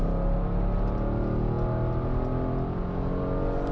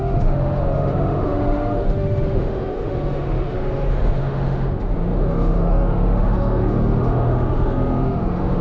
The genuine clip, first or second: first